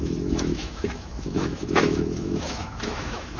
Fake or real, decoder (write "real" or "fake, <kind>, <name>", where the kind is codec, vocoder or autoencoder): fake, autoencoder, DAC-VAE